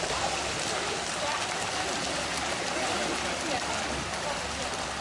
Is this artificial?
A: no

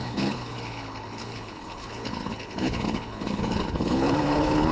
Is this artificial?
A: yes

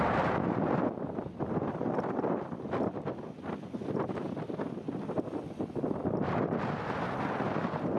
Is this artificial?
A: no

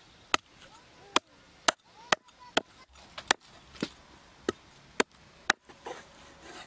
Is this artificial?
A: no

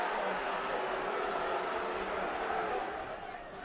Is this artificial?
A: no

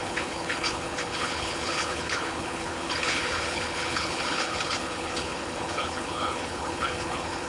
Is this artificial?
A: yes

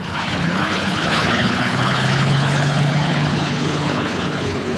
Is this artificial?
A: yes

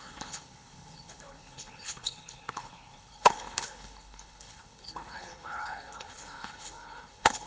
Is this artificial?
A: yes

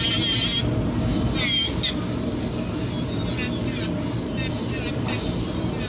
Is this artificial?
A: no